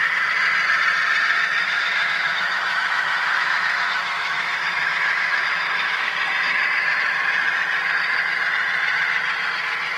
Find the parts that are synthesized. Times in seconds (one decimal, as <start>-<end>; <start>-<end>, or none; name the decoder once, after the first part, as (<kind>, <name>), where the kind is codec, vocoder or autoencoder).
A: 1.6-6.1 (autoencoder, DAC-VAE)